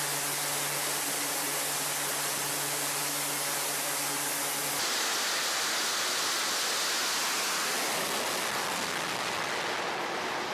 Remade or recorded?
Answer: recorded